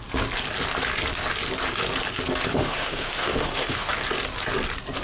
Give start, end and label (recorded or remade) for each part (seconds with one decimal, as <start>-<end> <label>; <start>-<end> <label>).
0.0-2.5 recorded; 2.5-3.9 remade; 3.9-5.0 recorded